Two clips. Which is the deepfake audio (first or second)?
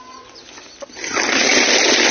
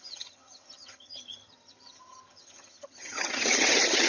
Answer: second